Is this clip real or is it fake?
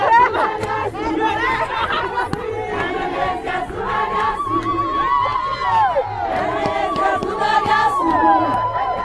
real